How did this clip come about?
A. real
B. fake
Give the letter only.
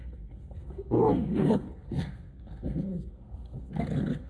B